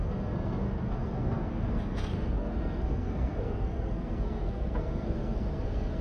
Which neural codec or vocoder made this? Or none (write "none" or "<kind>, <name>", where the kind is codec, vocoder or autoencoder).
codec, SNAC